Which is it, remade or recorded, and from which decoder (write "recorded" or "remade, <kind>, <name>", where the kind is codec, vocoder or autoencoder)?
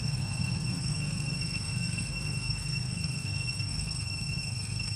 remade, codec, SNAC